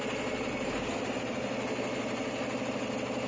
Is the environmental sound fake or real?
real